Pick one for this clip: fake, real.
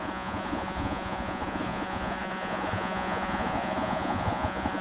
fake